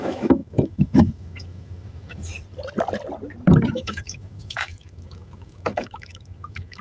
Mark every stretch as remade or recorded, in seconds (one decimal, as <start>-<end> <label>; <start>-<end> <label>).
0.0-2.3 remade; 2.3-3.7 recorded; 3.7-6.8 remade